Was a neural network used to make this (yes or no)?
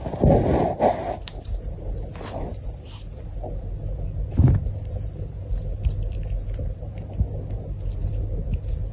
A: no